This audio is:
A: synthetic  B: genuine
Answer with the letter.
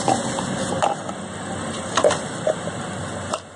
B